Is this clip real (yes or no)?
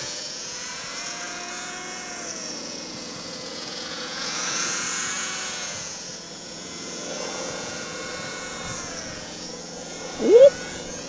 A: no